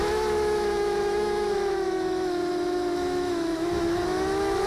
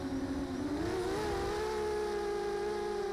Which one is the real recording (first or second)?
second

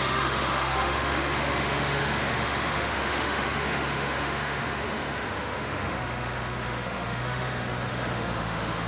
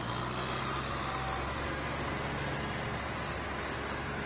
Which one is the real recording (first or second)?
second